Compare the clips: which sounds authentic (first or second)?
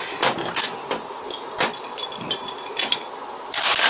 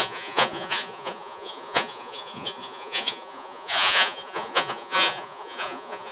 first